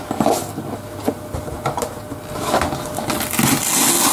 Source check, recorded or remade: recorded